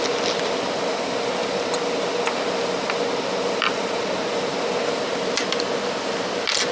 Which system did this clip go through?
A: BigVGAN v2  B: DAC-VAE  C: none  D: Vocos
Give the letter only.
C